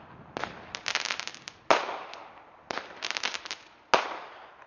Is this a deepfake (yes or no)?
no